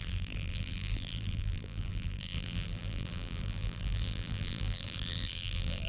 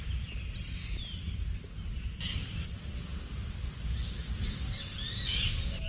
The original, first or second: second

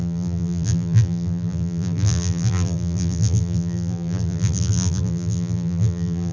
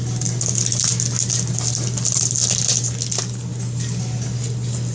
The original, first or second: second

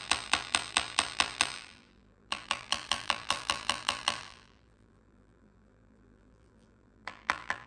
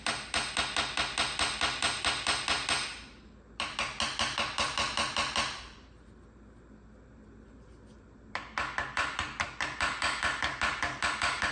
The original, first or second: second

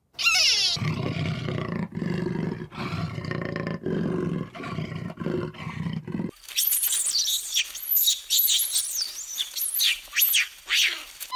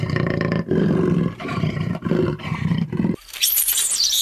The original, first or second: first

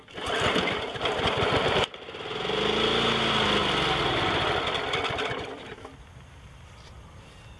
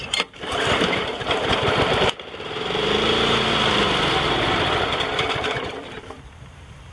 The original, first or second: first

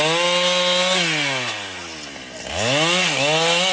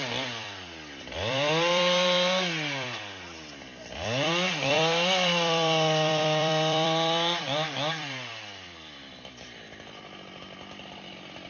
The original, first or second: first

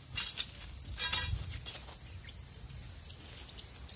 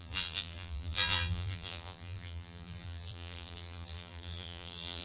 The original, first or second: first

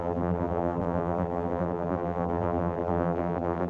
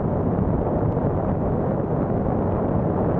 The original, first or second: second